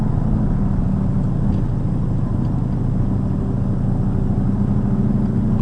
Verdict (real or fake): real